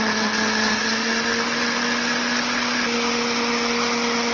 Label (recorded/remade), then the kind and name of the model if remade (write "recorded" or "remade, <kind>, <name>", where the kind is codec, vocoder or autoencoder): recorded